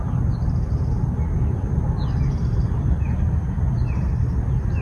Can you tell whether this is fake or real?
real